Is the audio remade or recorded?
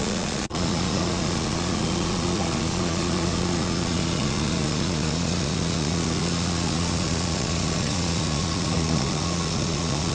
remade